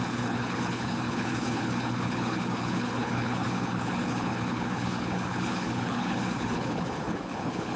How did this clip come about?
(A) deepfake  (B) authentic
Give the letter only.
A